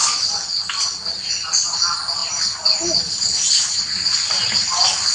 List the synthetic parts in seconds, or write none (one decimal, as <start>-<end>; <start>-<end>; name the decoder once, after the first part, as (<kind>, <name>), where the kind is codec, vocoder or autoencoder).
2.2-3.8 (vocoder, BigVGAN v2)